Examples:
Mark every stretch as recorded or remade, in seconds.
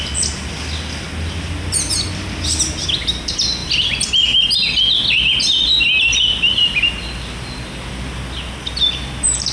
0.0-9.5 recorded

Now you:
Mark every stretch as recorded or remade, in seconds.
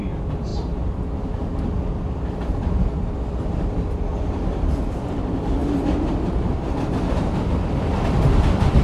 0.0-8.8 recorded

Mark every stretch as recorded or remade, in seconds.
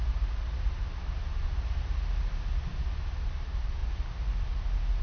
0.0-5.0 recorded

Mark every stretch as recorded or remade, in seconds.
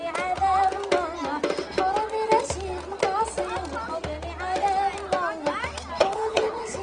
0.0-6.0 recorded; 6.0-6.8 remade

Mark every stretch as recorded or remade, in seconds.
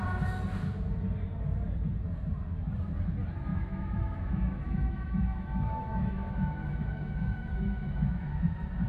0.0-3.5 recorded; 3.5-8.5 remade; 8.5-8.9 recorded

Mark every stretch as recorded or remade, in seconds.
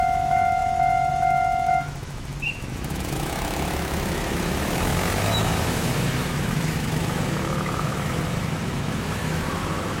0.0-10.0 remade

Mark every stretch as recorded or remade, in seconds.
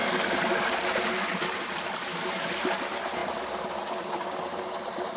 0.0-5.2 recorded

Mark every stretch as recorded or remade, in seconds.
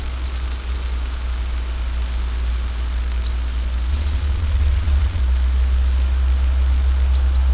0.0-3.9 recorded; 3.9-5.2 remade; 5.2-7.5 recorded